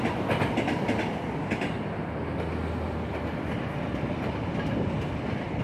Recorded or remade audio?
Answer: recorded